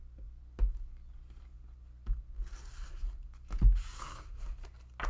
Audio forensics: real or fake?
real